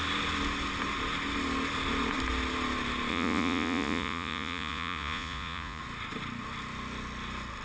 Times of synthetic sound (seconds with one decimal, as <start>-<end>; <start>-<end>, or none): 3.1-5.8